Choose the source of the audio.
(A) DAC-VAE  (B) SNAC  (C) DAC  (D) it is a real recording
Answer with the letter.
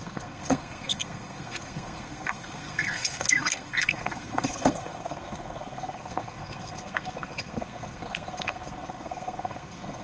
B